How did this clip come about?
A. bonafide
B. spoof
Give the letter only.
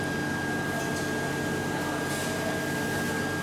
A